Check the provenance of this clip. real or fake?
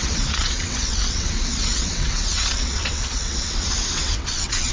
fake